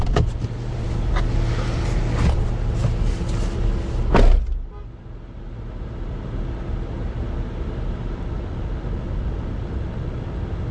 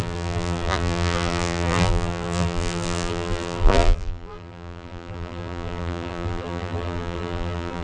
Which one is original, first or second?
first